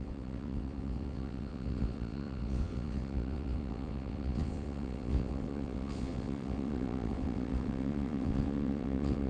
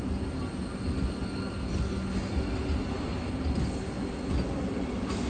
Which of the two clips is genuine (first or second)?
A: second